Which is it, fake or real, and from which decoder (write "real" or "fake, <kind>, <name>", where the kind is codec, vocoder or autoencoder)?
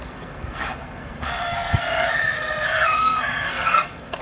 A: fake, codec, SNAC